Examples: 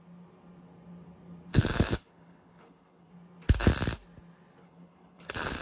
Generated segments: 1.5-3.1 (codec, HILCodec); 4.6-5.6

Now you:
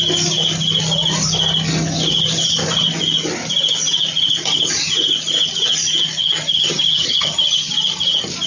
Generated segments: 6.2-7.7 (vocoder, HiFi-GAN)

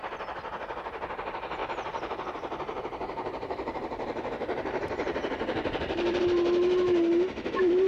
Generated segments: 1.6-6.2 (vocoder, BigVGAN v2)